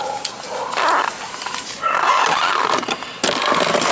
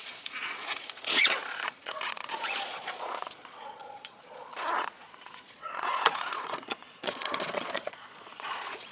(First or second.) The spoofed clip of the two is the second